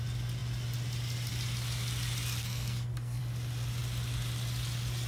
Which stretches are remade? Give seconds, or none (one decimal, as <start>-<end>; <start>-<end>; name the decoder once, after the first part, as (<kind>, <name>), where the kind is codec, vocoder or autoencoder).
2.4-3.2 (codec, SNAC)